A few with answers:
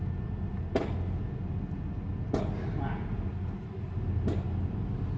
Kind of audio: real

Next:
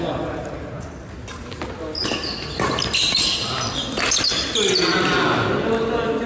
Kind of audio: real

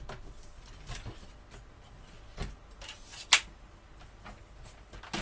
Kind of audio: real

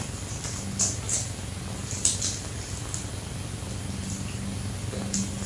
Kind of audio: real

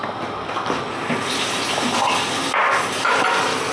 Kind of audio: real